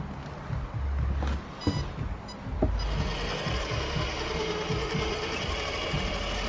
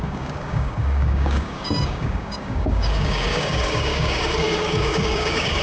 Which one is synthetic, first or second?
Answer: second